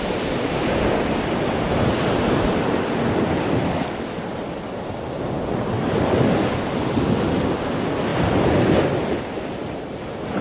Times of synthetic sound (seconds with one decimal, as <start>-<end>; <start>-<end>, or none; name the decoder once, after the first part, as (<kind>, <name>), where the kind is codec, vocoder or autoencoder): none